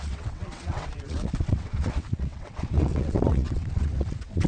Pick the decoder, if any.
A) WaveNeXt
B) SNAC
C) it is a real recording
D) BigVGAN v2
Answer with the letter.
A